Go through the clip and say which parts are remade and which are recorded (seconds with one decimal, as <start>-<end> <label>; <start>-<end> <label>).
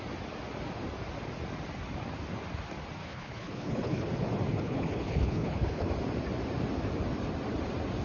0.0-3.0 recorded; 3.0-4.1 remade; 4.1-4.5 recorded; 4.5-5.9 remade; 5.9-8.0 recorded